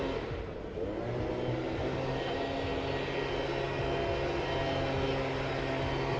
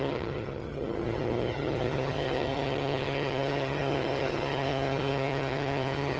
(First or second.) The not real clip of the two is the second